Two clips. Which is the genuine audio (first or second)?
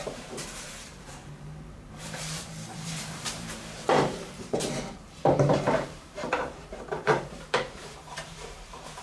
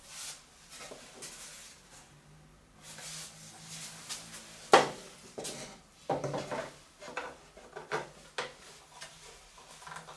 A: second